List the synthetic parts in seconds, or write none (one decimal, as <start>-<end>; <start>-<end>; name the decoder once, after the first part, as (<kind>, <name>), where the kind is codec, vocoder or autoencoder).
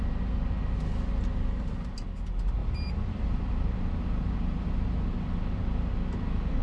2.6-3.8 (vocoder, BigVGAN v2)